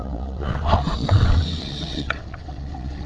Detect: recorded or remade remade